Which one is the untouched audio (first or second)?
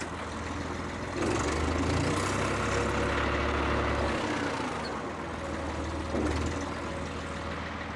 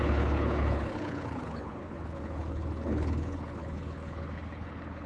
first